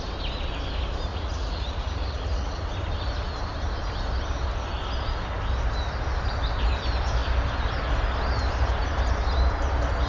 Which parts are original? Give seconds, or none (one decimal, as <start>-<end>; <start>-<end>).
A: 0.0-1.1; 2.7-10.1